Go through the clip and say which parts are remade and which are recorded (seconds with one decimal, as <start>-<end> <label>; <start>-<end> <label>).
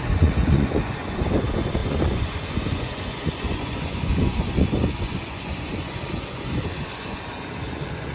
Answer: 0.0-8.1 remade